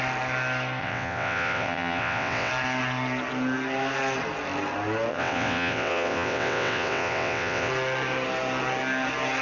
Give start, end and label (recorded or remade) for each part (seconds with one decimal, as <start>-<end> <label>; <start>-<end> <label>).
0.0-0.8 recorded; 0.8-2.5 remade; 2.5-5.1 recorded; 5.1-7.7 remade; 7.7-9.4 recorded